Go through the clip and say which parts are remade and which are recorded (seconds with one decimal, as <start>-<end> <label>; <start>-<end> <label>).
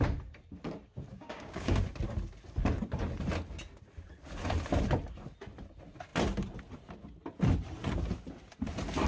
0.0-1.1 recorded; 1.1-1.8 remade; 1.8-9.1 recorded